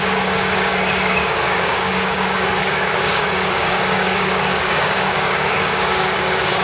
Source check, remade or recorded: remade